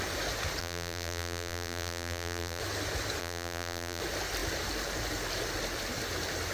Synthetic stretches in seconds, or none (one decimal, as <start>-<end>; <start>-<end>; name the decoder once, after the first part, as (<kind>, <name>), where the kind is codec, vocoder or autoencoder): 0.6-2.6 (vocoder, BigVGAN v2); 3.2-4.0